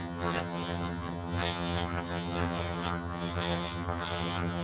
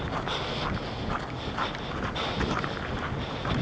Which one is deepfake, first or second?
first